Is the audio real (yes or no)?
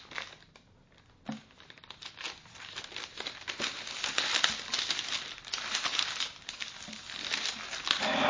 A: yes